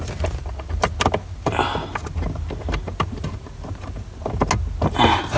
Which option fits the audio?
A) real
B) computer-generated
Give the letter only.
A